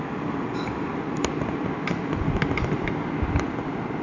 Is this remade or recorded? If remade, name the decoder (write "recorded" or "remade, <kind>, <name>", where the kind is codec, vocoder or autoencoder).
recorded